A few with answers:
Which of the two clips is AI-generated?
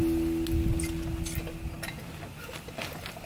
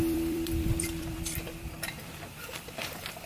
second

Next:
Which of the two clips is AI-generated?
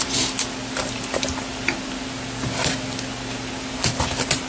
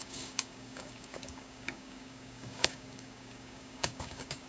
second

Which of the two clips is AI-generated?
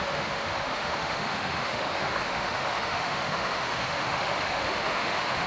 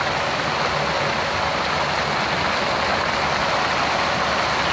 first